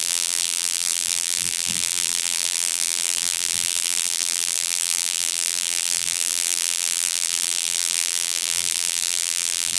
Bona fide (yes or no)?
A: no